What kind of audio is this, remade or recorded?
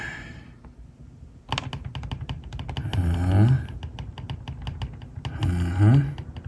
recorded